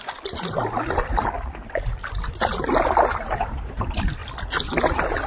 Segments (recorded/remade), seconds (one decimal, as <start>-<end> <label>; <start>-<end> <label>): 0.0-3.2 recorded; 3.2-4.2 remade; 4.2-5.3 recorded